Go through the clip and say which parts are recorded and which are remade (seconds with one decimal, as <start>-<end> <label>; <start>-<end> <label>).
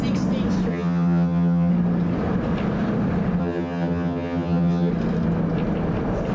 0.0-0.7 recorded; 0.7-1.7 remade; 1.7-3.4 recorded; 3.4-4.9 remade; 4.9-6.3 recorded